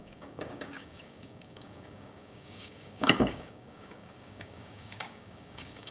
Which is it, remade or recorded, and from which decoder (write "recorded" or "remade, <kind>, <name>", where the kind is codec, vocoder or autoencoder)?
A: remade, codec, DAC